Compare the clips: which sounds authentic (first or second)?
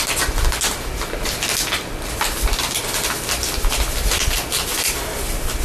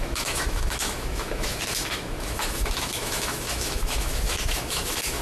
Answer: first